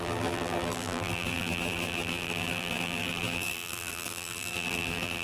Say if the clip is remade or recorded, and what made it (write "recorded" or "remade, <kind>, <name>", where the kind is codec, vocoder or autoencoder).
remade, vocoder, BigVGAN v2